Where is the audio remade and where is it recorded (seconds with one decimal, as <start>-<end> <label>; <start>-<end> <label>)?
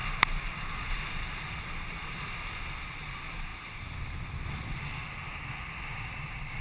0.0-6.6 recorded